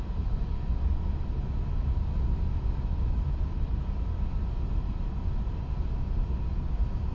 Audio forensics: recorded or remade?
recorded